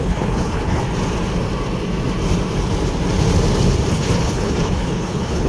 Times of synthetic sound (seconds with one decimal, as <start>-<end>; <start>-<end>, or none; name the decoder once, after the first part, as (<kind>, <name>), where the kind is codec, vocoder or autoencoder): 0.0-0.8 (codec, HILCodec); 3.9-5.5